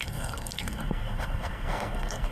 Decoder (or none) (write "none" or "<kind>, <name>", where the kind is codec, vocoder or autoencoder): codec, SNAC